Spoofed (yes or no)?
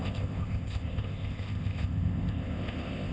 yes